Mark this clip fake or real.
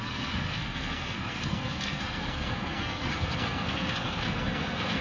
fake